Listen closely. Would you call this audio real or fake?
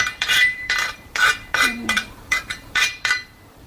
fake